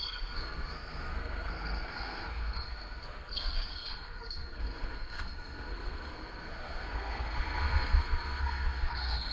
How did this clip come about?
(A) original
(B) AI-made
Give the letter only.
B